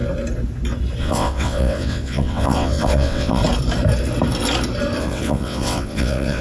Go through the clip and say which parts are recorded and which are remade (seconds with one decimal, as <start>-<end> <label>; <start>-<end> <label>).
0.0-1.0 recorded; 1.0-3.4 remade; 3.4-5.0 recorded; 5.0-6.4 remade